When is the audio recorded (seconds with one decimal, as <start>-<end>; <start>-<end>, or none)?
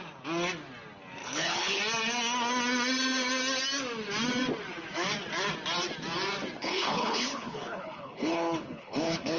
0.0-1.2; 1.8-6.6